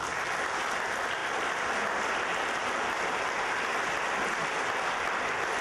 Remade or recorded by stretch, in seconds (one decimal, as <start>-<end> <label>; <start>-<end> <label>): 0.0-5.6 recorded